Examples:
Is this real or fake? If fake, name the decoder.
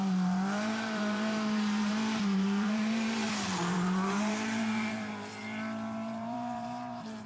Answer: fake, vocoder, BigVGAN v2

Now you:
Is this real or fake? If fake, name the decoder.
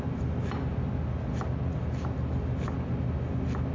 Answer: real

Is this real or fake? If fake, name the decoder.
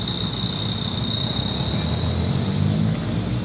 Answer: real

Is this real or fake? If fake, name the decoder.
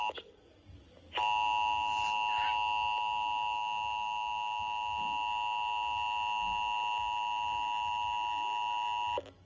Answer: real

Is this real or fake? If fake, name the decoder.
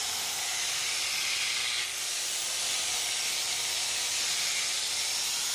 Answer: real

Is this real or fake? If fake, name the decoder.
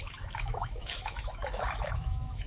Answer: fake, autoencoder, DAC-VAE